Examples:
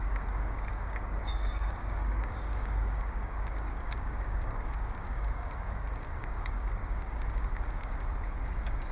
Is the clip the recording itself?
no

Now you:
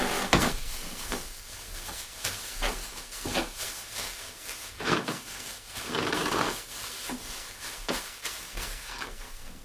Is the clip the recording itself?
no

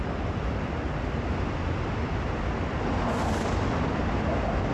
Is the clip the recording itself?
yes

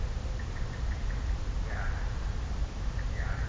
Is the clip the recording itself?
yes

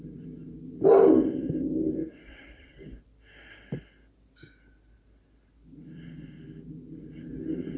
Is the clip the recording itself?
yes